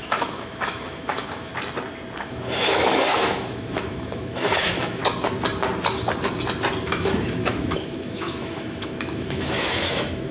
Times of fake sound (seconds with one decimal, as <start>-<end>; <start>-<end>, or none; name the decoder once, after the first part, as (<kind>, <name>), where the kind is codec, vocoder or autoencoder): 0.0-1.5 (autoencoder, DAC-VAE); 2.2-5.0; 6.9-10.3